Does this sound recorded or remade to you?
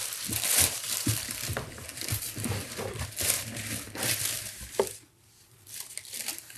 remade